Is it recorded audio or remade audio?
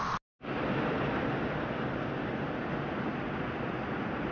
recorded